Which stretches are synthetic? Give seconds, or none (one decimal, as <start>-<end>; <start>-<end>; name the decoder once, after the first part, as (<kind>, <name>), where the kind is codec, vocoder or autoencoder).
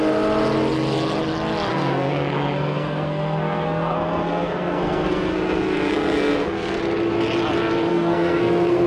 1.7-6.8 (codec, SNAC); 7.9-8.9